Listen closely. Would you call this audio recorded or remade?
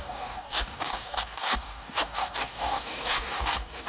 remade